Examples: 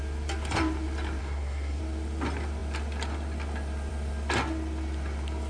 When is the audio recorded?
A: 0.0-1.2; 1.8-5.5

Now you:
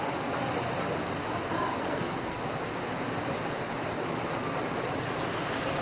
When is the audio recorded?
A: 0.0-1.7; 2.4-5.8